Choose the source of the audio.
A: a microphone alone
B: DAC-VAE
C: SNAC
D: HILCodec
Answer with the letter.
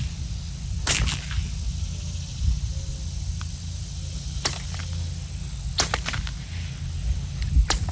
A